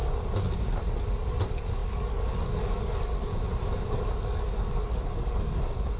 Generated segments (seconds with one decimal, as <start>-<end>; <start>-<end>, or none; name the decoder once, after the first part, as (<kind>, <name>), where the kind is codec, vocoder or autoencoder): 1.3-3.3 (codec, DAC); 3.9-6.0